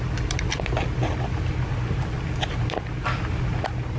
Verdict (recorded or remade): recorded